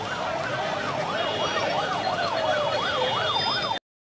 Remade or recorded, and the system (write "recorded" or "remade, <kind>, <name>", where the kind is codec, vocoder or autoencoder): recorded